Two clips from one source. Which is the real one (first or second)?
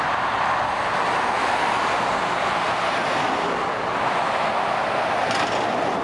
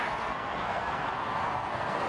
first